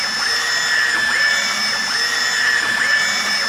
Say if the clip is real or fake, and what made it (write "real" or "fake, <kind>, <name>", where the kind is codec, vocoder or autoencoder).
real